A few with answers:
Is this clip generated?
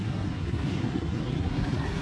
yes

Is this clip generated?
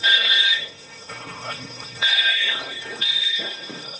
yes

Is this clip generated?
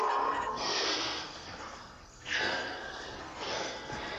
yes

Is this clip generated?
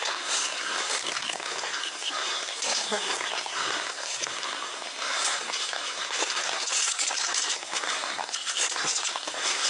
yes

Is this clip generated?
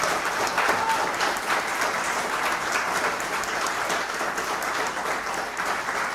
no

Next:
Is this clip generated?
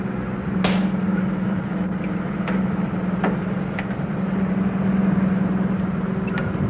no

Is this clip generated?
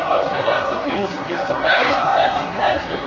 yes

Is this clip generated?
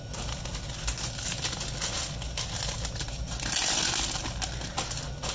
no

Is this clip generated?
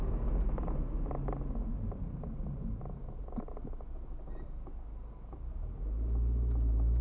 no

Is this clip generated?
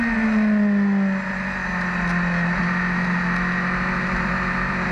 no